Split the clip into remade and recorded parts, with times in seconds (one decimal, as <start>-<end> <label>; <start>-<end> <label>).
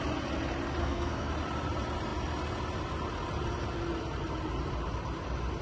0.0-0.8 recorded; 0.8-1.3 remade; 1.3-5.6 recorded